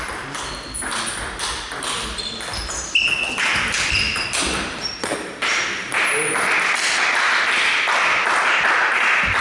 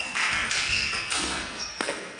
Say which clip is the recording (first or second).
first